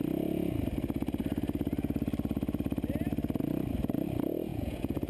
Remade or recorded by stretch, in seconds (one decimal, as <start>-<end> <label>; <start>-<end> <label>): 0.0-4.5 recorded; 4.5-5.1 remade